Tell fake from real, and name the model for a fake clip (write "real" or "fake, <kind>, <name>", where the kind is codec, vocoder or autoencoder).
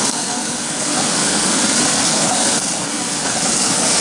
fake, codec, SNAC